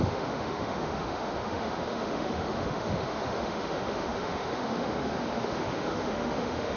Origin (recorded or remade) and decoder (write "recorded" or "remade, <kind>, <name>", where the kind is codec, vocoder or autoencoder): remade, autoencoder, DAC-VAE